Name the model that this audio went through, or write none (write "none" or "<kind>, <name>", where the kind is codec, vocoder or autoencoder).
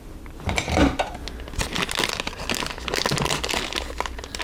none